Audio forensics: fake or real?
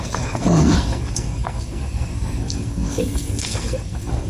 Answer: fake